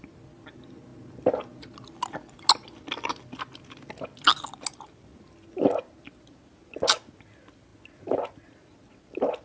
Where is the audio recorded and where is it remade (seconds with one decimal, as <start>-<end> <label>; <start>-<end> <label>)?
0.0-9.4 recorded